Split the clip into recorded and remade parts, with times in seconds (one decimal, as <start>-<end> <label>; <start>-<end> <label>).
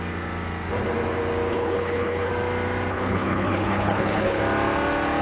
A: 0.0-1.5 recorded; 1.5-2.3 remade; 2.3-2.9 recorded; 2.9-4.4 remade; 4.4-5.2 recorded